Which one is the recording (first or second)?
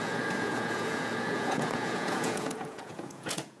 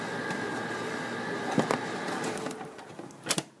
second